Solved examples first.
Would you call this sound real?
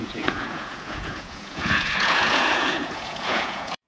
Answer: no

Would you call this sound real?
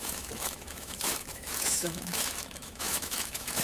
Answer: no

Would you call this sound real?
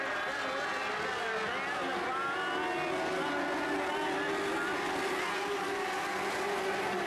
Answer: yes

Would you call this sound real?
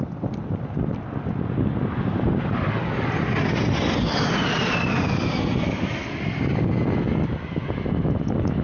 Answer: yes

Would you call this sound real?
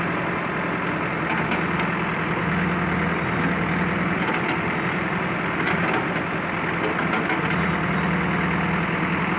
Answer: yes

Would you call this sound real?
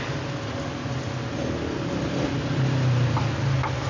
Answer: yes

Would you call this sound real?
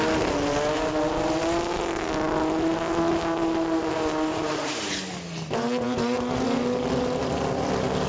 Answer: yes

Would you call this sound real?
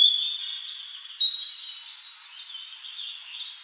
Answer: yes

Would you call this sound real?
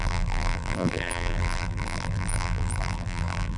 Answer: no